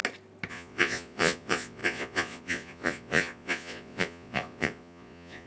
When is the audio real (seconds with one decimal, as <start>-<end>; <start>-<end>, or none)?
0.0-0.5